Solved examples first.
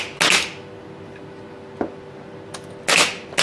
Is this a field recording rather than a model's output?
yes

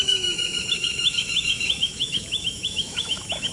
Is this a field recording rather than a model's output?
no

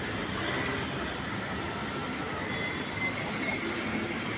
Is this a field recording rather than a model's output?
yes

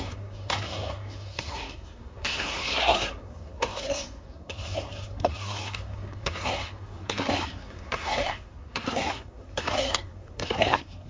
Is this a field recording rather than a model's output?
no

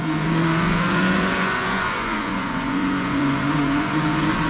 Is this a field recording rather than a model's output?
no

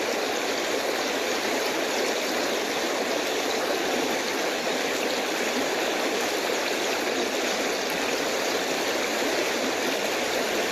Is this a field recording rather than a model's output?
yes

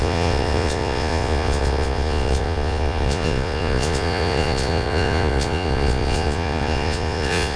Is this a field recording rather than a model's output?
no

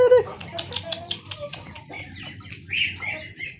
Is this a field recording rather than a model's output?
yes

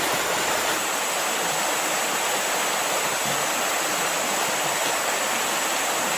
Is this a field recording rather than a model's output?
yes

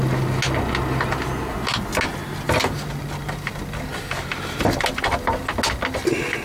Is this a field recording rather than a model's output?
yes